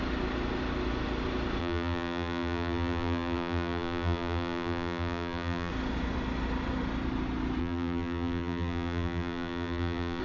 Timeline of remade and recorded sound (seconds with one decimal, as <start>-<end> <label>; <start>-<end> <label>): 0.0-1.6 recorded; 1.6-5.7 remade; 5.7-7.6 recorded; 7.6-10.2 remade